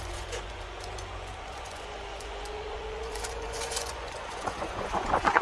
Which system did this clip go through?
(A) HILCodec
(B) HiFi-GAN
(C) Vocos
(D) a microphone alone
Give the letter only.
C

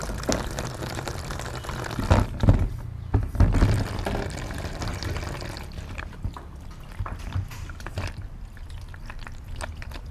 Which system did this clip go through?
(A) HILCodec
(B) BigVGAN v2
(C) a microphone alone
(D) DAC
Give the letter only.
C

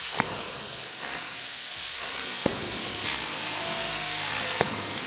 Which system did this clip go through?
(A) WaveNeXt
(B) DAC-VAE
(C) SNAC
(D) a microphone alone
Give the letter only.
C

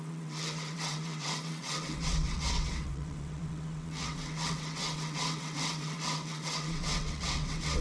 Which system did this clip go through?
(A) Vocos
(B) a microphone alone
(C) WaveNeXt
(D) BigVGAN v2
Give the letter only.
C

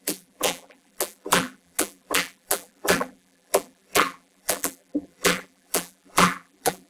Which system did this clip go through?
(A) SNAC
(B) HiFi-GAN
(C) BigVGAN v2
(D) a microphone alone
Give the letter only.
C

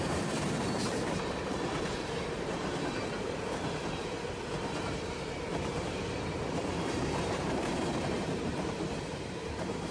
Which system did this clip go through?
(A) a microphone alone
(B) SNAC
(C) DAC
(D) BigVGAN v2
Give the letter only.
D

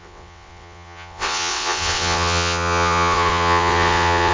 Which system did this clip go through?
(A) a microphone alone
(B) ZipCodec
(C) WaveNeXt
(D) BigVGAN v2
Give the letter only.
C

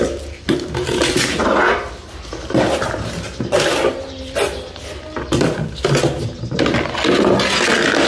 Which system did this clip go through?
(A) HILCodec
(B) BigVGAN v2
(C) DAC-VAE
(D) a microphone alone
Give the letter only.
D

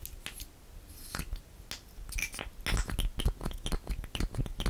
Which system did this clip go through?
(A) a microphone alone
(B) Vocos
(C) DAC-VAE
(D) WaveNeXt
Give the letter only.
A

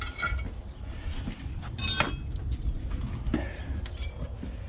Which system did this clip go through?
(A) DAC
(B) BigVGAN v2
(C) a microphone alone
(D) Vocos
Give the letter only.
C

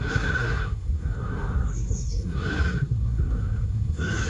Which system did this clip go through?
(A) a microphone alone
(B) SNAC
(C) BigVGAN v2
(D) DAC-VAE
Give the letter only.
B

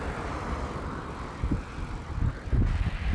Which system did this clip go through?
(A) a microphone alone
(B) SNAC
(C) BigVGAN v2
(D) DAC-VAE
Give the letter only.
C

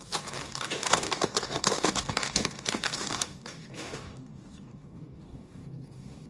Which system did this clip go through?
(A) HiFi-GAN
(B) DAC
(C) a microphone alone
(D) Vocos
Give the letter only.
B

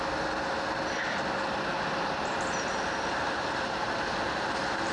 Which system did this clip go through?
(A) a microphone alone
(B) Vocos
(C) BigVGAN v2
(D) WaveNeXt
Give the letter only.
A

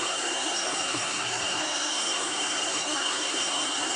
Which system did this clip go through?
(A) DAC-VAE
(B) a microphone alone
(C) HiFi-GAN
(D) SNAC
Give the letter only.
D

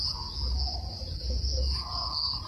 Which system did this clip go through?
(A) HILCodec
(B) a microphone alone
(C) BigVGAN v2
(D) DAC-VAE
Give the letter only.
B